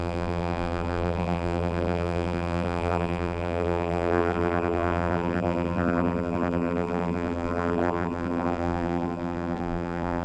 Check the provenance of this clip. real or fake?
fake